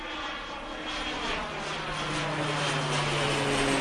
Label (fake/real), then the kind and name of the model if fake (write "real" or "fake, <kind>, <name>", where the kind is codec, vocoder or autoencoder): real